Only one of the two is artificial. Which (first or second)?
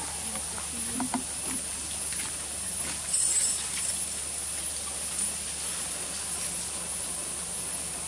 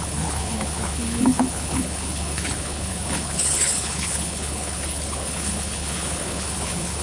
second